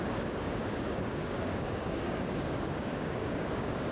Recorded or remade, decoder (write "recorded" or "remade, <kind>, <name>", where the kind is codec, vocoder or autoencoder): remade, codec, DAC